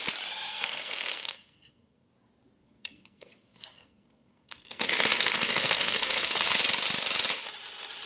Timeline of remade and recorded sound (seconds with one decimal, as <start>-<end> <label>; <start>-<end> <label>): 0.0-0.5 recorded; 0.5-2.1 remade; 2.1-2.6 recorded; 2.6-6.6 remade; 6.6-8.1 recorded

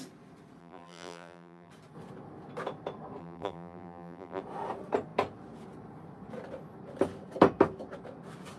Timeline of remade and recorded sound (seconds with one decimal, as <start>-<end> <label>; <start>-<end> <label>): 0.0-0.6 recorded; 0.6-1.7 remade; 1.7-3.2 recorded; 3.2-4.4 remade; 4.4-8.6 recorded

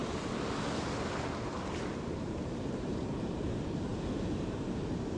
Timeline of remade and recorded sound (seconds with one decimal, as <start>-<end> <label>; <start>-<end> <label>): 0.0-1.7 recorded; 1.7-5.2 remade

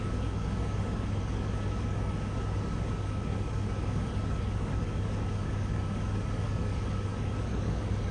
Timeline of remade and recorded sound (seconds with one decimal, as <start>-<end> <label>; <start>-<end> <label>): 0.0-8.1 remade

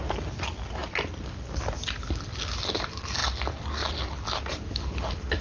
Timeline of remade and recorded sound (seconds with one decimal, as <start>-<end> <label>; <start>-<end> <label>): 0.0-5.4 recorded

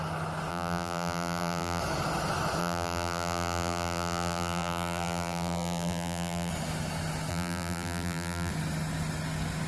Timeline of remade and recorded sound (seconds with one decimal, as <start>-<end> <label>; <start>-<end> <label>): 0.0-0.5 recorded; 0.5-1.8 remade; 1.8-2.6 recorded; 2.6-6.5 remade; 6.5-7.3 recorded; 7.3-8.5 remade; 8.5-9.7 recorded